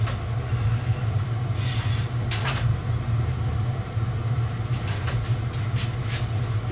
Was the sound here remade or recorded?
recorded